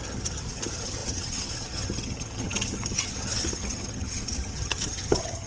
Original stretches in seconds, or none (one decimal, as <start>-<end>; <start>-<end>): none